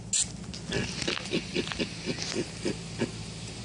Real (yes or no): yes